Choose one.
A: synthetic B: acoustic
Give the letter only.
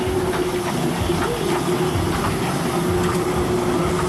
B